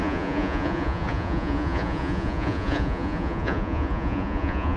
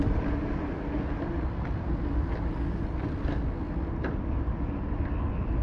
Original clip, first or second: second